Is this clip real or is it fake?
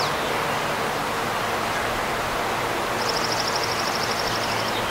real